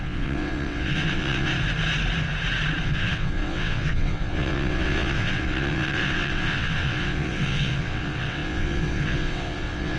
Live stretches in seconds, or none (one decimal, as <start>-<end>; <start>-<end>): 1.5-2.8